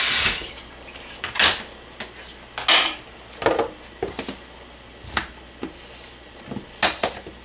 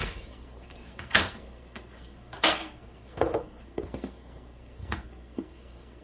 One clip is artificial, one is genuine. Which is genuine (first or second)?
first